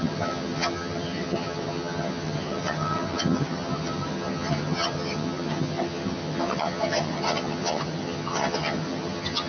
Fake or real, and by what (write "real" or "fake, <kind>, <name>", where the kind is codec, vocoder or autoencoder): fake, vocoder, HiFi-GAN